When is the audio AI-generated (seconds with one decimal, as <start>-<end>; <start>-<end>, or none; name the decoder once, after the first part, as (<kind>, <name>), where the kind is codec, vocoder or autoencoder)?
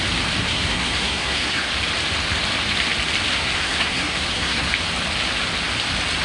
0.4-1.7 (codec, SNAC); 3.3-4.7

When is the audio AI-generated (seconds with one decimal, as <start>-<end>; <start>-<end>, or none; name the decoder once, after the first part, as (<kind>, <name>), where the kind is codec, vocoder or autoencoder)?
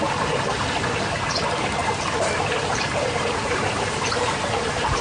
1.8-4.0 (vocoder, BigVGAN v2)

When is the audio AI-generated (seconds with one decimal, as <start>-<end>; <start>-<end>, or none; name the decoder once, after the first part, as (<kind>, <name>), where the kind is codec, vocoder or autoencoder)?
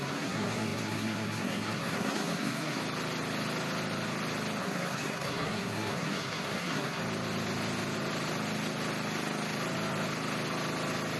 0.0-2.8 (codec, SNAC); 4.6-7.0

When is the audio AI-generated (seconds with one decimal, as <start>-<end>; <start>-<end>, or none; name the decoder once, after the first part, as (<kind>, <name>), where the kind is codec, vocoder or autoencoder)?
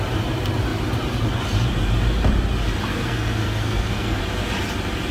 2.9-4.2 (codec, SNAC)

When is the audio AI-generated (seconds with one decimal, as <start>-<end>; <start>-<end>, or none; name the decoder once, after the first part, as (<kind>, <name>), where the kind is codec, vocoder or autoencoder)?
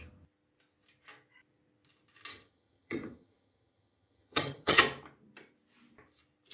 2.3-4.8 (vocoder, HiFi-GAN)